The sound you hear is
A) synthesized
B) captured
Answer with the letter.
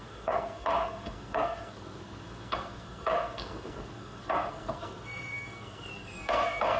A